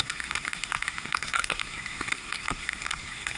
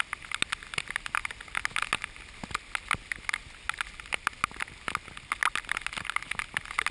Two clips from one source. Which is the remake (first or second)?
first